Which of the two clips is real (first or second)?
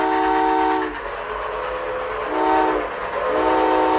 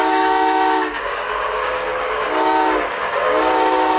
first